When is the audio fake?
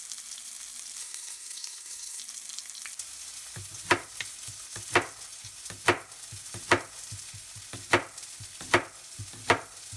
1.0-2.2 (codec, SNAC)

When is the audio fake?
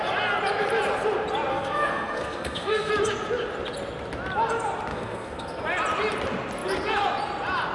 1.5-2.9 (codec, SNAC); 4.9-5.6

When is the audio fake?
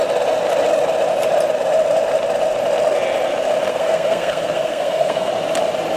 3.7-5.3 (codec, SNAC)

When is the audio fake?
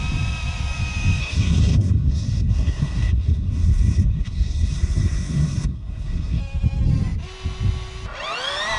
1.2-6.4 (codec, SNAC)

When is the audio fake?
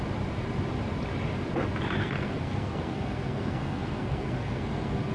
2.0-5.1 (codec, SNAC)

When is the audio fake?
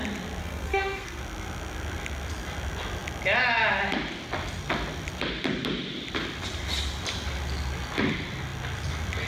0.4-1.2 (codec, SNAC)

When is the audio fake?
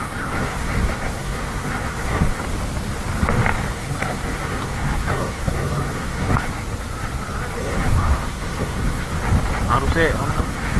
0.0-2.4 (codec, SNAC); 3.7-6.5; 7.6-9.1; 10.4-10.8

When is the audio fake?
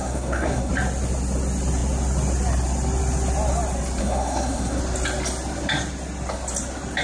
0.0-0.7 (codec, SNAC); 4.0-4.8